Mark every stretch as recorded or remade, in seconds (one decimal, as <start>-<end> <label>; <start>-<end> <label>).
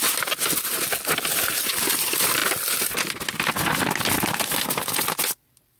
0.0-5.8 recorded